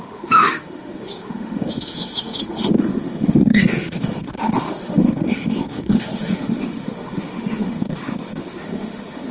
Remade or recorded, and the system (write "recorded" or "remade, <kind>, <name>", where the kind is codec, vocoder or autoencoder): remade, autoencoder, DAC-VAE